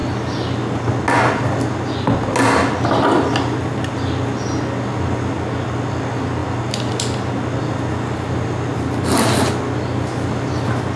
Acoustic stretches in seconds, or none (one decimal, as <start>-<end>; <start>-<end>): 0.0-11.0